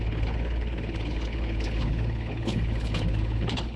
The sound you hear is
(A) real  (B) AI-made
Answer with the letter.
B